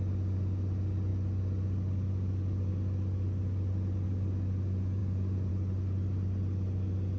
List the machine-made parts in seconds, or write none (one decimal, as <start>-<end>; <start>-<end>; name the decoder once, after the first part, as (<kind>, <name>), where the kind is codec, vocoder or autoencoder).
none